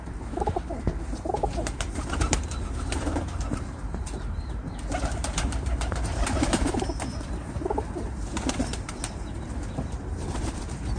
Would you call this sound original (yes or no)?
no